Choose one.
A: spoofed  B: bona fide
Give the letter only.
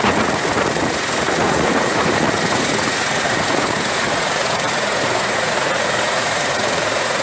A